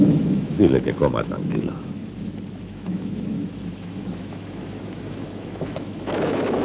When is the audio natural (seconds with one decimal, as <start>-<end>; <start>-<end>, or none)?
2.0-2.7